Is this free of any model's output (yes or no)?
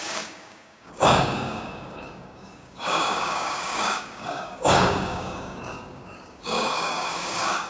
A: no